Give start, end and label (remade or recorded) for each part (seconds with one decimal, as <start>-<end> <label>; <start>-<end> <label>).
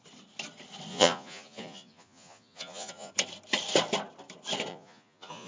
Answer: 0.0-0.9 recorded; 0.9-3.1 remade; 3.1-4.7 recorded; 4.7-5.5 remade